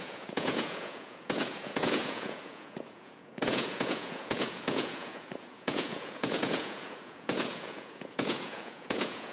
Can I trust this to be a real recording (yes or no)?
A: no